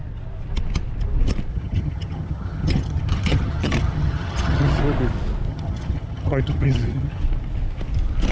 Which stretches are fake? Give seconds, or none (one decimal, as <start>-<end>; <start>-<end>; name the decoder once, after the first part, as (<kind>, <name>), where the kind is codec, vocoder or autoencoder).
1.5-4.8 (vocoder, HiFi-GAN); 5.5-7.2